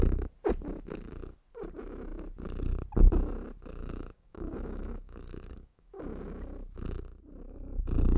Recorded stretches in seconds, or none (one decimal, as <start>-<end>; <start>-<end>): 0.0-3.8; 5.9-8.2